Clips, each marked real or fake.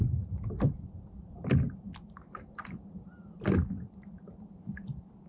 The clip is real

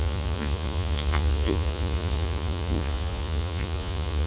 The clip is fake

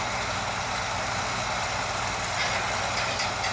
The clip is real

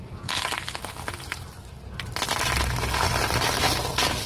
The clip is real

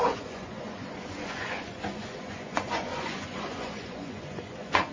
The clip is fake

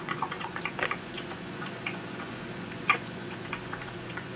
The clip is fake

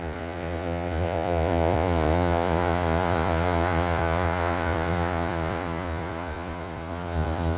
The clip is fake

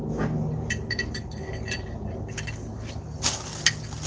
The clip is real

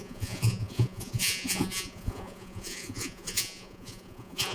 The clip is fake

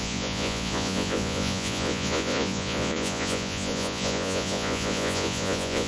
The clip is fake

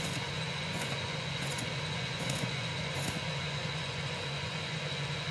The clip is fake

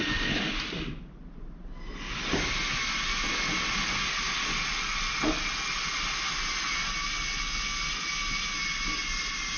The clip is real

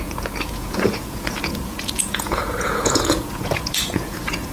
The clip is fake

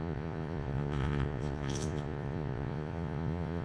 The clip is fake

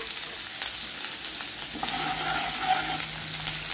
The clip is real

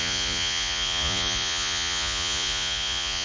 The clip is fake